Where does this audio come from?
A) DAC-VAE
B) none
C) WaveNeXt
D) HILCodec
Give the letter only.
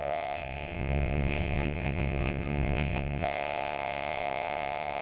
C